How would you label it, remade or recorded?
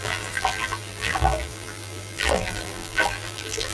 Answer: remade